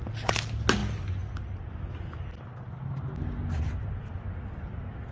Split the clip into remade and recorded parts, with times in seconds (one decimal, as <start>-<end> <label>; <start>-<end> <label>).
0.0-5.1 recorded